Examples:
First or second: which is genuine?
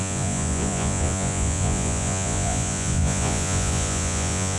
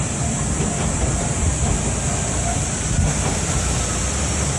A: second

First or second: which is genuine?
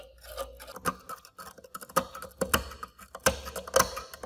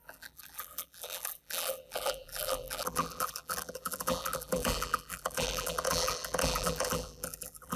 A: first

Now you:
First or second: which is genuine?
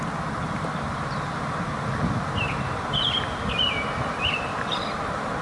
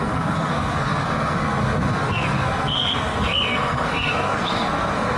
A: first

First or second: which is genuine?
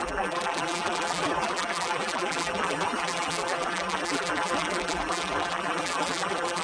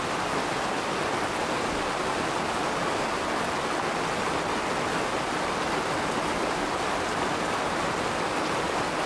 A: second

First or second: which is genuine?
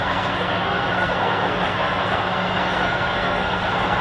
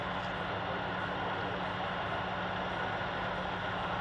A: second